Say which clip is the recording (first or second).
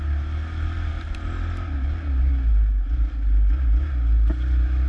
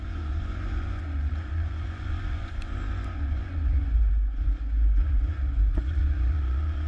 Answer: first